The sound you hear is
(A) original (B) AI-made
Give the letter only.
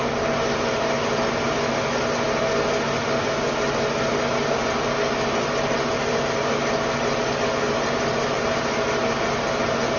A